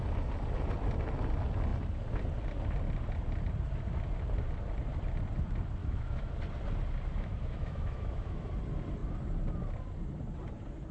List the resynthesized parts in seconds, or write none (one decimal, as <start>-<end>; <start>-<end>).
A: 5.8-6.3; 7.1-8.5